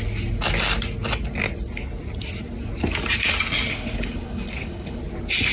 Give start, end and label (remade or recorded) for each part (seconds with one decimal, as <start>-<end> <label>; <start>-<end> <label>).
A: 0.0-3.7 recorded; 3.7-5.0 remade; 5.0-5.5 recorded